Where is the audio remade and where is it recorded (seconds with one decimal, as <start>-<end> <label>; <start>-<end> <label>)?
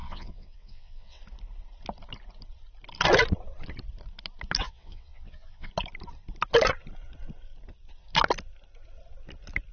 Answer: 0.0-1.2 remade; 1.2-4.6 recorded; 4.6-5.7 remade; 5.7-9.7 recorded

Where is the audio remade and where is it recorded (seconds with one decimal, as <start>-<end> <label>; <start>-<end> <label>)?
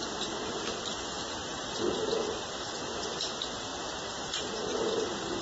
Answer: 0.0-5.4 recorded